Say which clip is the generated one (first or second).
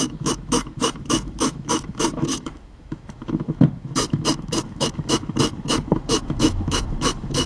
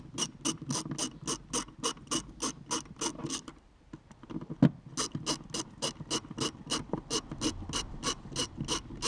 first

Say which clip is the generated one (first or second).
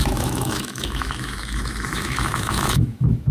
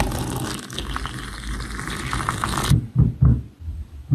first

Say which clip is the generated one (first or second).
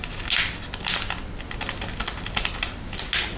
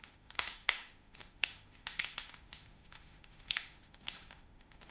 second